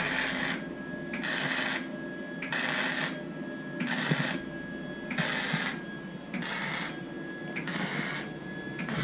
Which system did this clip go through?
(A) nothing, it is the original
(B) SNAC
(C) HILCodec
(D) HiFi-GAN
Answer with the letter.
A